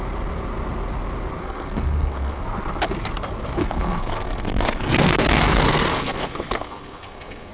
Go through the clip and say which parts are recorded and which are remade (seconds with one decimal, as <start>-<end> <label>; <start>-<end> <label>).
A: 0.0-1.4 recorded; 1.4-2.4 remade; 2.4-3.6 recorded; 3.6-7.5 remade